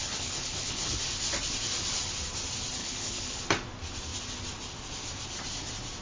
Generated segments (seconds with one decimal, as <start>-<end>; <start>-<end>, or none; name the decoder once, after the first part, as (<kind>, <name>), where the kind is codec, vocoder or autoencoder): 0.0-1.0 (codec, HILCodec); 2.8-3.4